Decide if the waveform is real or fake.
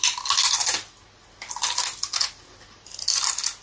real